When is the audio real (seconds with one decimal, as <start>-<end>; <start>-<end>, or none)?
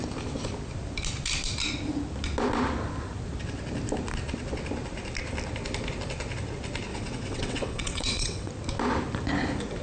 0.0-6.9; 8.5-9.8